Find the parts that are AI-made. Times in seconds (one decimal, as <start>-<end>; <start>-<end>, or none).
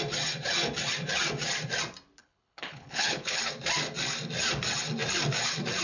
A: 2.2-3.4